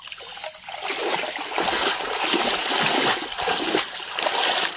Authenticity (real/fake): real